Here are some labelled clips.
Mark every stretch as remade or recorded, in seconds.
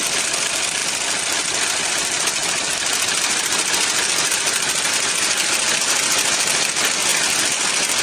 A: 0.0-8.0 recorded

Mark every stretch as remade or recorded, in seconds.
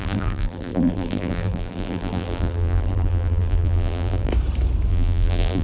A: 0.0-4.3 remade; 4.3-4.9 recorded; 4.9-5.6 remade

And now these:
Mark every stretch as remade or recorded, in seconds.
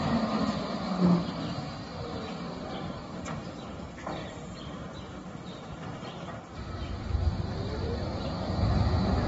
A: 0.0-1.9 recorded; 1.9-3.2 remade; 3.2-4.2 recorded; 4.2-8.6 remade; 8.6-9.3 recorded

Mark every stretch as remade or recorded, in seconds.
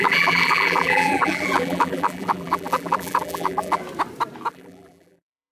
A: 0.0-3.8 remade; 3.8-4.5 recorded; 4.5-5.5 remade